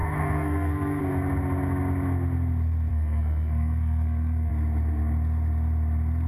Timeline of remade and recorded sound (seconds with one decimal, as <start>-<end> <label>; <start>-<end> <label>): 0.0-1.0 remade; 1.0-2.9 recorded; 2.9-4.5 remade; 4.5-6.3 recorded